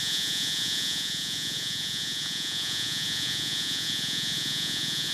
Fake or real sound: fake